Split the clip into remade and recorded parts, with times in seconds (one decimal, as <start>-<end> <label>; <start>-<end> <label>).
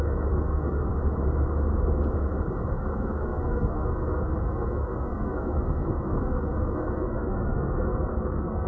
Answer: 0.0-0.9 remade; 0.9-2.7 recorded; 2.7-8.7 remade